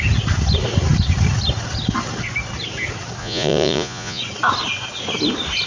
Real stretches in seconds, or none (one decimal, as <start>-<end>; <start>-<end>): 0.0-3.2; 4.2-5.7